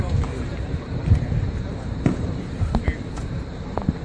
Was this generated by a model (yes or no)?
yes